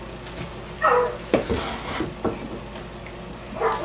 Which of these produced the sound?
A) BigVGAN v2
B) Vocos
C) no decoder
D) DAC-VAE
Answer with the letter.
C